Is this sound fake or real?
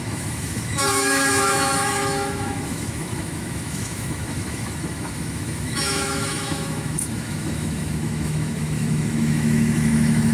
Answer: fake